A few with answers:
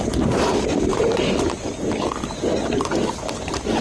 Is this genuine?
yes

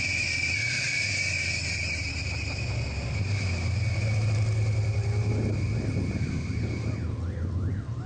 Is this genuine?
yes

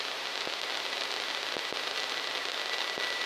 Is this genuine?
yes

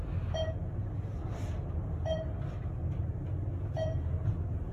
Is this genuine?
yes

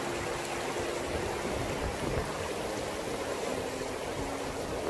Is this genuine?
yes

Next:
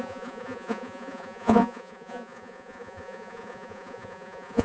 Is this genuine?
no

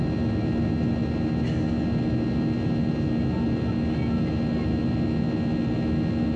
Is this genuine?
yes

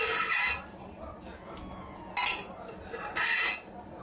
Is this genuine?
yes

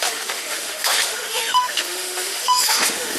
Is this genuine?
no